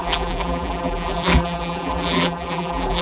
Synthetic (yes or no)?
yes